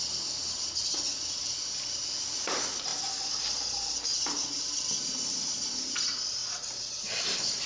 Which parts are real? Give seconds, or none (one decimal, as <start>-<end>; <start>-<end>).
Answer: 0.0-7.7

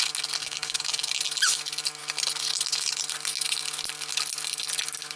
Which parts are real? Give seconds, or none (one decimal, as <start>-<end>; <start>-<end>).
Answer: 0.0-0.4; 1.1-5.2

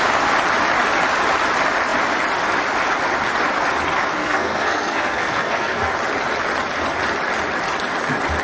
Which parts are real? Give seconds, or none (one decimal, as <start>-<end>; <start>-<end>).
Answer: 0.0-4.2; 5.9-8.4

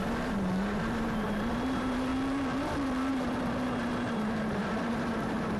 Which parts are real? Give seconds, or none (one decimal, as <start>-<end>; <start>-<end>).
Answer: 2.1-3.1

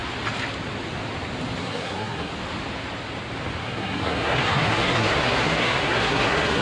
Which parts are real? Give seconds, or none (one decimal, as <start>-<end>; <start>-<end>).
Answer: 0.0-1.6; 2.3-3.6

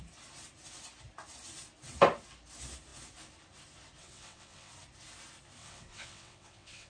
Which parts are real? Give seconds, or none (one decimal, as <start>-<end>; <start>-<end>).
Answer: 0.0-4.0; 4.7-5.6

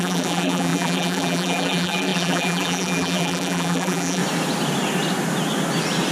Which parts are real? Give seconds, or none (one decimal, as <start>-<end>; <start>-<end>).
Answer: 4.2-6.1